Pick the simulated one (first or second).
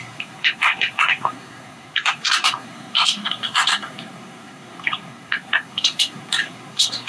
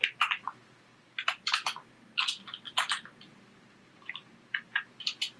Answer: first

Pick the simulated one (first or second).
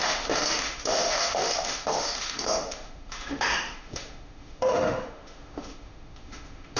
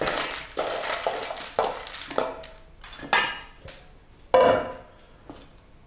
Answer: first